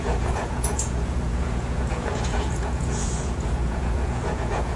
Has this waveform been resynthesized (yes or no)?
yes